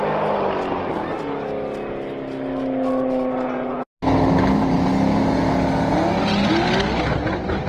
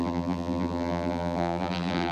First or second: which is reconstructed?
second